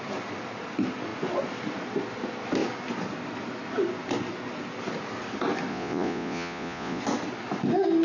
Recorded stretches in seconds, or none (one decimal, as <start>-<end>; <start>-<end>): 0.0-5.7; 7.0-8.0